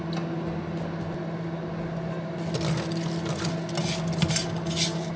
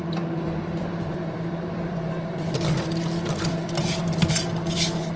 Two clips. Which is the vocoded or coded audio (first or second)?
second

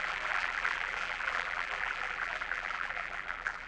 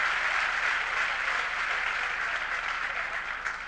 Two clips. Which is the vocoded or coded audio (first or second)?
first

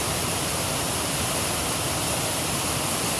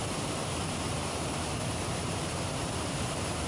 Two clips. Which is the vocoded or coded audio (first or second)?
second